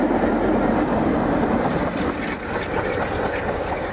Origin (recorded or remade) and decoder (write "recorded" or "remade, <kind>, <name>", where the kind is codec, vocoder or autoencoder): recorded